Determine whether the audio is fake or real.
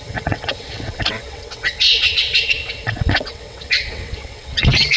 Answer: fake